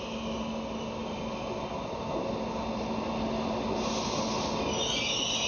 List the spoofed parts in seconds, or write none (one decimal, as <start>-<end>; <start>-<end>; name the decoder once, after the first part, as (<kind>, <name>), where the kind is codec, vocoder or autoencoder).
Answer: none